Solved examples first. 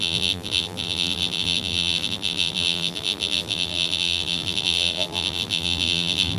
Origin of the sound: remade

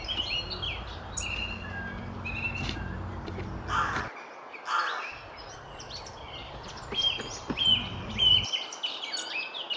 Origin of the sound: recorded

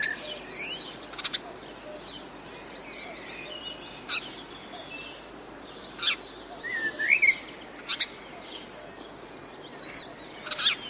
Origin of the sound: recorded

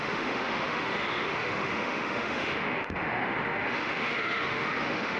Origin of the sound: remade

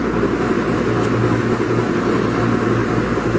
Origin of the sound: recorded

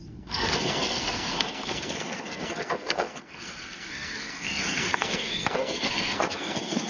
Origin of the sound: remade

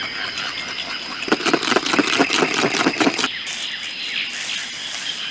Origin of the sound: recorded